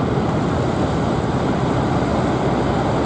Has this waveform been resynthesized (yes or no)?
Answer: no